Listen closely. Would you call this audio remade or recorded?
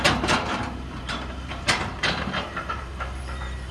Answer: remade